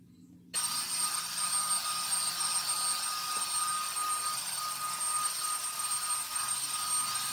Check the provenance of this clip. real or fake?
real